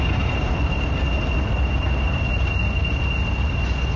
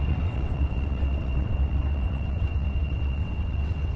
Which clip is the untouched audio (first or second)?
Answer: first